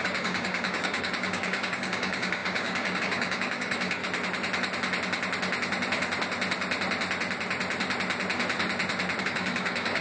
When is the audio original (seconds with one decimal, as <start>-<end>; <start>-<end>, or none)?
4.0-9.2